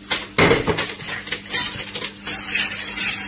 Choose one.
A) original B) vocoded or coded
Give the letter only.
A